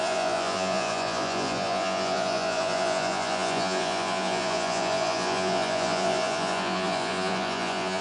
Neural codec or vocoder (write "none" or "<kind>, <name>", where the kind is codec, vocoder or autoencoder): vocoder, Vocos